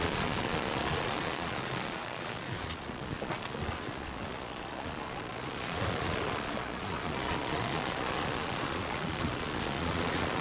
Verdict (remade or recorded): remade